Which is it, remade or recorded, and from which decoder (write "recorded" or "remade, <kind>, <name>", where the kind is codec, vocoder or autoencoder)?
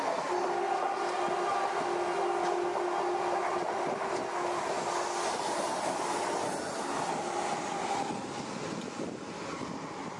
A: recorded